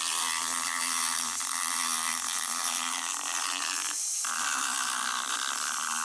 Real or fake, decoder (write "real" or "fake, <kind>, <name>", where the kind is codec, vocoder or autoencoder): real